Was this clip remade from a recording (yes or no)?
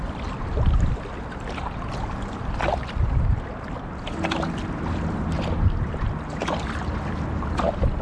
no